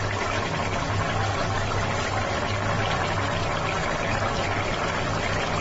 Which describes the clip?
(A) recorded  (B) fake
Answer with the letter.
A